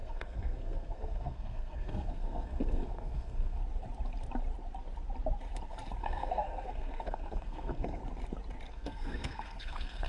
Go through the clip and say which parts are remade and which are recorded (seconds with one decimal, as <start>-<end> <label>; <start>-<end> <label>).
0.0-3.6 remade; 3.6-6.0 recorded; 6.0-8.0 remade; 8.0-8.7 recorded; 8.7-10.1 remade